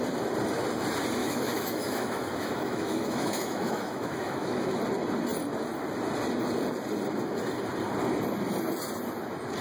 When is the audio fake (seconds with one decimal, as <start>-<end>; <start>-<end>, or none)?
1.2-4.8